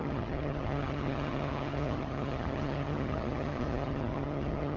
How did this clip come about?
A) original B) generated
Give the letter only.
B